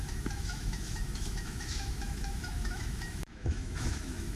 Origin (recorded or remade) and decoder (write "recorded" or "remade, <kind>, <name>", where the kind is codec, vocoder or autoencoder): remade, autoencoder, DAC-VAE